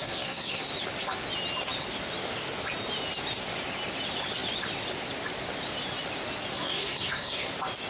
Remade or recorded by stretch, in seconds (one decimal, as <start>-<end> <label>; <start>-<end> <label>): 0.0-0.6 remade; 0.6-6.5 recorded; 6.5-7.5 remade; 7.5-7.9 recorded